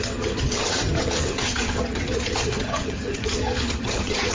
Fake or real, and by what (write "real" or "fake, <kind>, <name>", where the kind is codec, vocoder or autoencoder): fake, vocoder, HiFi-GAN